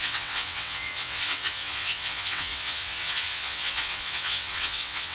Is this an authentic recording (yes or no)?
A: no